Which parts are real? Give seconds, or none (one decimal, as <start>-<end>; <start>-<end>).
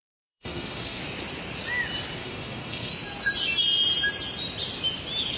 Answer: 1.0-2.2; 2.9-5.4